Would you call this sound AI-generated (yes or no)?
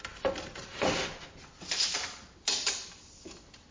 no